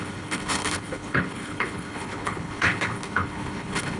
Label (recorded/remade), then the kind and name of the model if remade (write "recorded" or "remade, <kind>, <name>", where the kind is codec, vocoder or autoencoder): remade, codec, HILCodec